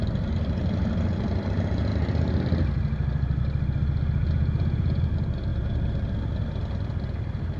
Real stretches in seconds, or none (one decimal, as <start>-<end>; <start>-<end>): 0.0-4.2; 5.0-7.6